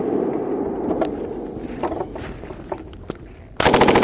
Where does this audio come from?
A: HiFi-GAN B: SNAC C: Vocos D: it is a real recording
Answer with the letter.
D